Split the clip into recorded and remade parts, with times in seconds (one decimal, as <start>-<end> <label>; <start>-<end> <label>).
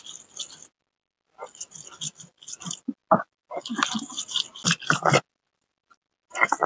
0.0-6.7 recorded